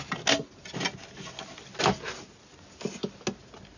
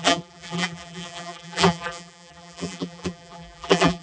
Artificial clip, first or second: second